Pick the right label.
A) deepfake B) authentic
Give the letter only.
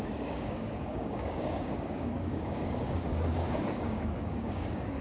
A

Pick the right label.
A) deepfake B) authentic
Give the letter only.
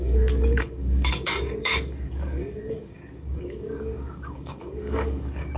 A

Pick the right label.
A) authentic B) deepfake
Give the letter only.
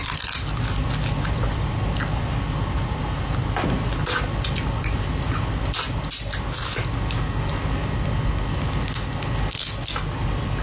A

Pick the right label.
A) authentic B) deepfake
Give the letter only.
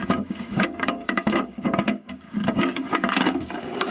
B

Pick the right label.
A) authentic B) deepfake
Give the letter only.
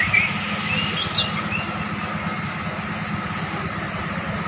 A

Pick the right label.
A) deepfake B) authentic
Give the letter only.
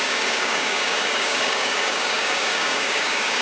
A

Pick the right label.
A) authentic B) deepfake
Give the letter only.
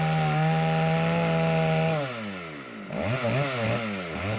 A